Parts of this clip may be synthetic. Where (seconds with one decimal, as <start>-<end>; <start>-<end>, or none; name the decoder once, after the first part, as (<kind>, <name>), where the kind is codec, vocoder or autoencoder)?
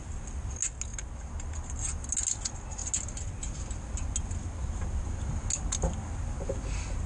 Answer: none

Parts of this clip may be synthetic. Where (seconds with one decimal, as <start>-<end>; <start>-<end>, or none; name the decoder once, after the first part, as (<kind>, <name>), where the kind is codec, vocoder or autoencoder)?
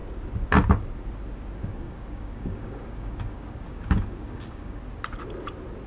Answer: 1.6-4.8 (codec, DAC)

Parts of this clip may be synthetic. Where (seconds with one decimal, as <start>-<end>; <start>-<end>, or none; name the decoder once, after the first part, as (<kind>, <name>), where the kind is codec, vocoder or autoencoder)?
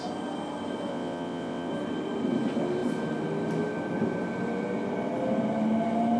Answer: 0.9-1.7 (vocoder, WaveNeXt)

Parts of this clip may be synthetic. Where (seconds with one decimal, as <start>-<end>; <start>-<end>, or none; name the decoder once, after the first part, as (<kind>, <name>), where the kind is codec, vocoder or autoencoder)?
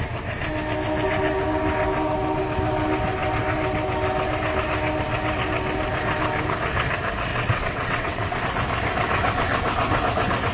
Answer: 7.3-8.4 (vocoder, WaveNeXt)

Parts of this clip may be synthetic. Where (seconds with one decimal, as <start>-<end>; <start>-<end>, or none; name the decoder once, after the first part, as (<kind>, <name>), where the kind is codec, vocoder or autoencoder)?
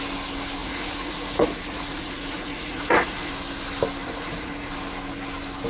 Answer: 0.6-3.3 (vocoder, Vocos); 4.0-4.7